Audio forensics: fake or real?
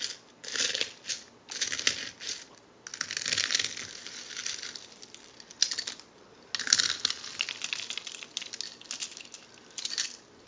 real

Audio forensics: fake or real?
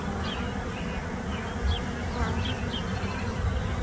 real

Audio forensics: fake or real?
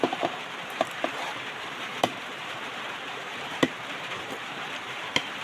fake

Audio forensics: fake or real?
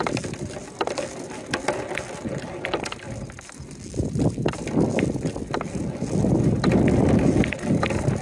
real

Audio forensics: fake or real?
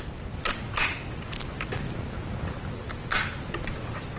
real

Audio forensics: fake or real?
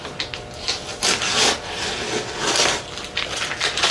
real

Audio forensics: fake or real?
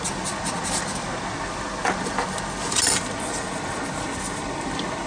real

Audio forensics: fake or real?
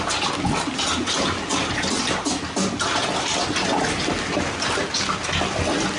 real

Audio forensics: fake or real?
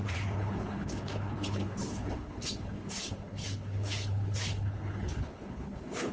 fake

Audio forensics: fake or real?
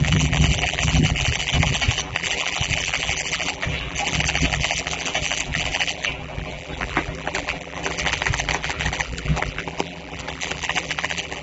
fake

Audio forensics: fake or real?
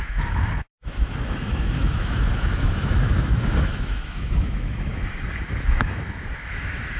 fake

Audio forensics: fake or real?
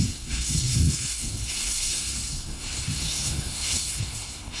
fake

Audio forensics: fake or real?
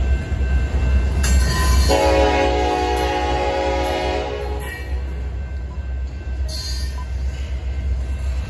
real